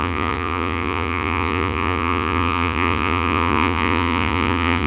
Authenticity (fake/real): fake